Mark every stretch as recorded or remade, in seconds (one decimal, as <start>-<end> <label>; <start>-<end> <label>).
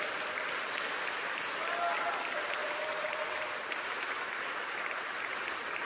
0.0-5.9 recorded